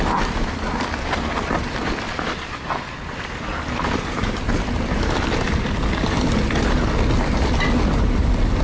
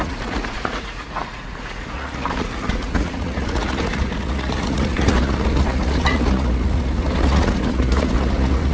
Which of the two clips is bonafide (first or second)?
first